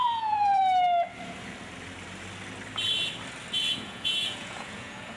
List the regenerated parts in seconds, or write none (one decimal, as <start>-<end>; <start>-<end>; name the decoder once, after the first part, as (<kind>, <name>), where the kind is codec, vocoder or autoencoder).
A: 0.0-0.6 (vocoder, Vocos); 3.7-5.2